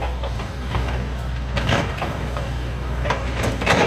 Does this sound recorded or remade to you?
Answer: remade